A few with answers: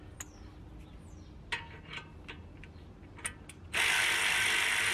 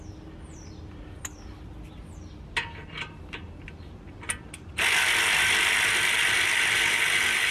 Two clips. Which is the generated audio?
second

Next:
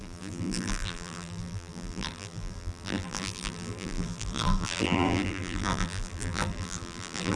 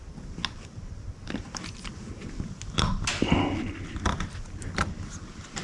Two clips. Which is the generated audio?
first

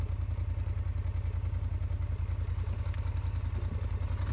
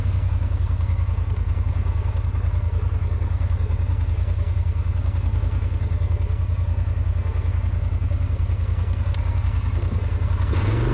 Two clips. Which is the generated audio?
second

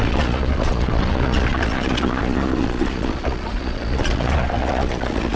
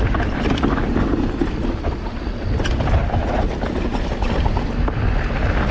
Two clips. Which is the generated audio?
first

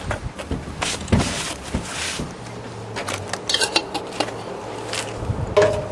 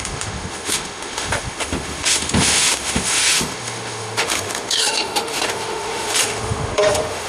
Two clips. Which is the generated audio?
second